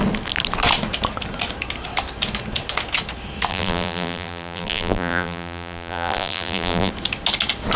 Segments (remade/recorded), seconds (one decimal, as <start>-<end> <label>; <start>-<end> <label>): 0.0-3.5 recorded; 3.5-6.9 remade; 6.9-7.8 recorded

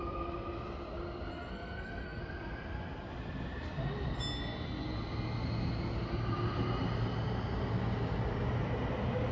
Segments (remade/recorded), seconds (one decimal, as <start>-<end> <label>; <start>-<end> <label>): 0.0-1.3 recorded; 1.3-2.2 remade; 2.2-9.3 recorded

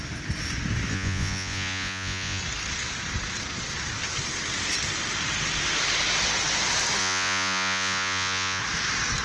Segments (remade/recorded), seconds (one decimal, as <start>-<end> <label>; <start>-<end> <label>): 0.0-0.9 recorded; 0.9-2.4 remade; 2.4-7.0 recorded; 7.0-8.6 remade; 8.6-9.2 recorded